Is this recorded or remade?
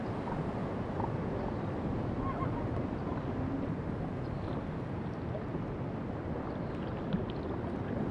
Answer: recorded